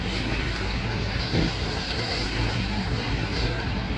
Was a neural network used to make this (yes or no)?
yes